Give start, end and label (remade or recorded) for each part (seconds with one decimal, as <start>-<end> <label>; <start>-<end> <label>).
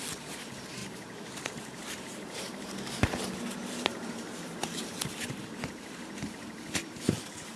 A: 0.0-0.8 recorded; 0.8-2.9 remade; 2.9-3.6 recorded; 3.6-5.0 remade; 5.0-7.6 recorded